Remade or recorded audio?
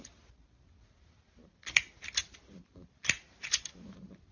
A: recorded